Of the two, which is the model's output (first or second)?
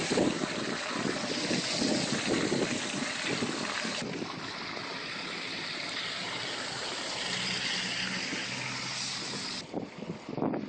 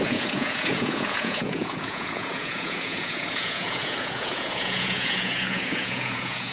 second